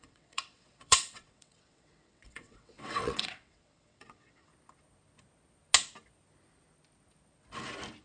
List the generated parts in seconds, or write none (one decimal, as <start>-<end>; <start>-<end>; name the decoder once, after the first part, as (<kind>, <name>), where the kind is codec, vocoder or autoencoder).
0.0-4.5 (vocoder, WaveNeXt)

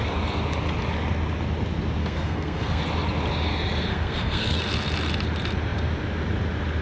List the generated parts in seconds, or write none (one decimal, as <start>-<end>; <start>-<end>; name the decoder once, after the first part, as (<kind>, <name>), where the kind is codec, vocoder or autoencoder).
2.0-2.8 (codec, SNAC); 3.9-4.6